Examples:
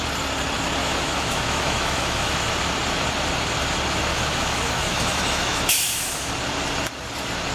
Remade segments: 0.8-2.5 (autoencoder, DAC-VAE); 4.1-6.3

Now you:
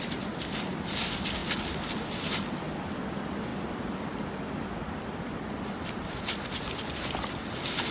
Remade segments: none

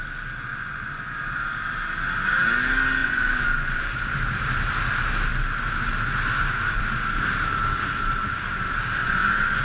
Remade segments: 0.5-1.2 (vocoder, Vocos); 3.0-3.8; 9.0-9.6

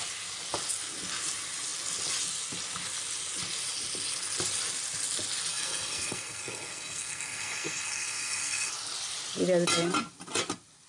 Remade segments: 5.5-8.7 (codec, SNAC)